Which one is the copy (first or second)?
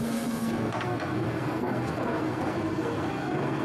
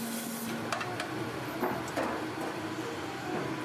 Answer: first